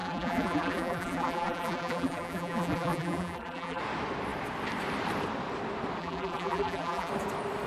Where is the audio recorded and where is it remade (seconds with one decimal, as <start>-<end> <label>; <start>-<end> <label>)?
0.0-3.8 remade; 3.8-6.0 recorded; 6.0-7.1 remade; 7.1-7.7 recorded